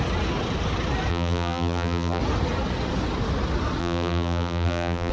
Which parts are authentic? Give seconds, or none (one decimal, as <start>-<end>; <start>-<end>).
0.0-1.1; 2.2-3.8